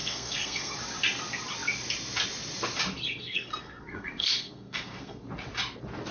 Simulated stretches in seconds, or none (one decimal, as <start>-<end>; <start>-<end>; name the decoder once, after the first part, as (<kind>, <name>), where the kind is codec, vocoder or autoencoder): 0.0-0.7 (codec, SNAC); 3.2-5.2